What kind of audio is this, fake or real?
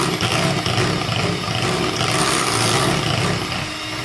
real